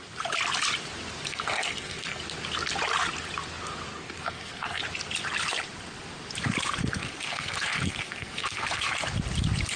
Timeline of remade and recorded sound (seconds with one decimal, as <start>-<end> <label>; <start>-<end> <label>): 0.0-1.3 recorded; 1.3-2.2 remade; 2.2-3.9 recorded; 3.9-4.8 remade; 4.8-6.8 recorded; 6.8-8.9 remade; 8.9-9.8 recorded